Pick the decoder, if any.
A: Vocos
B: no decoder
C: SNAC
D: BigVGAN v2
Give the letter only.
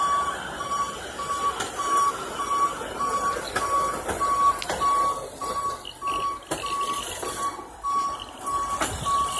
B